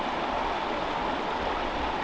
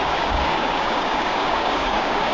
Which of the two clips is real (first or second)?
first